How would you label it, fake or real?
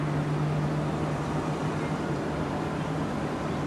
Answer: real